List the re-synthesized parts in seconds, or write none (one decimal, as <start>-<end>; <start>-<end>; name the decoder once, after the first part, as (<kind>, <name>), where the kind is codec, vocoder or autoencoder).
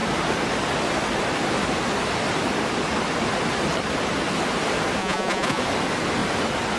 5.0-5.6 (vocoder, Vocos)